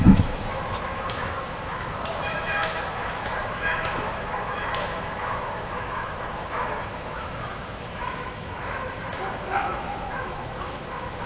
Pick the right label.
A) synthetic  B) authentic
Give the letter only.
A